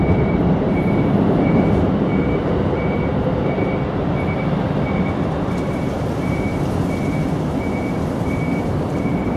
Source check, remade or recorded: remade